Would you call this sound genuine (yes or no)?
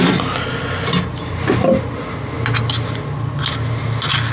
yes